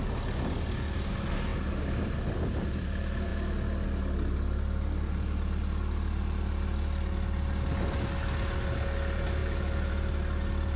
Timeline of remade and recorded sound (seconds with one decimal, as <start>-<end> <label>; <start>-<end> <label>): 0.0-9.4 recorded; 9.4-9.9 remade; 9.9-10.8 recorded